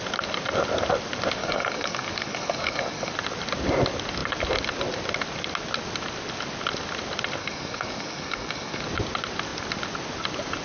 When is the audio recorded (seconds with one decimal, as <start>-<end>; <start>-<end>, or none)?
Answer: 0.0-1.4; 3.1-7.4; 8.8-10.6